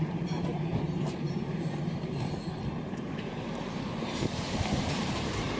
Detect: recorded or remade remade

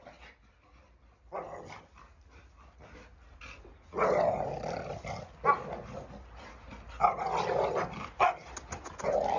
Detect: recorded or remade recorded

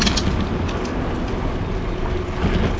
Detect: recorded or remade recorded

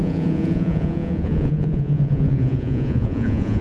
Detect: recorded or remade remade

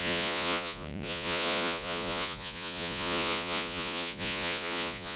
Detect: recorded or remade remade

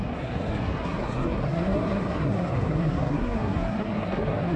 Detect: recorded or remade remade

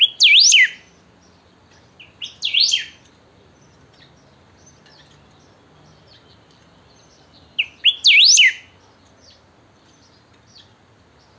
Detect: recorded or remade recorded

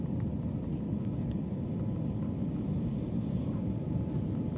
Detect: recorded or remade recorded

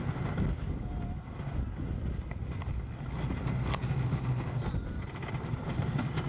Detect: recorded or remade recorded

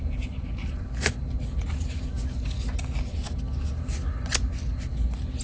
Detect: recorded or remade recorded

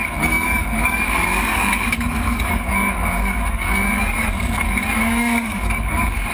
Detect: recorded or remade remade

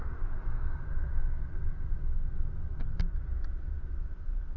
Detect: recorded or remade recorded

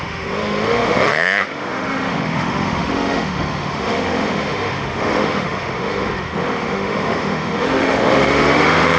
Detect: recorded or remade remade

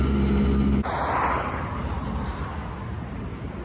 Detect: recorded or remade recorded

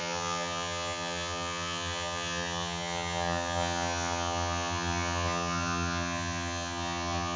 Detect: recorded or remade remade